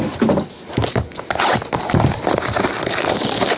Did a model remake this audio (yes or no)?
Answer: no